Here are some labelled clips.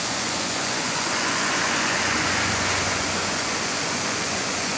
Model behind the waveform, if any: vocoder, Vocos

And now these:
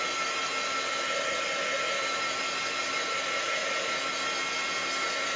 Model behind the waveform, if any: none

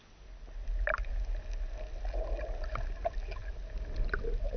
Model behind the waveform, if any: none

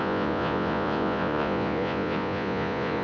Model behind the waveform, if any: vocoder, Vocos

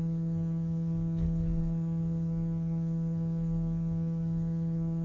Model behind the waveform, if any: codec, SNAC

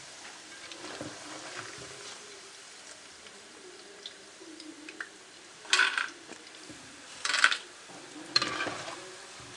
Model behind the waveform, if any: vocoder, BigVGAN v2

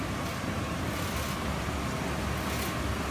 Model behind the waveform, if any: none